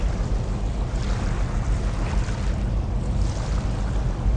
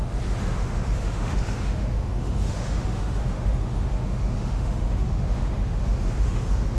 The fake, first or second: second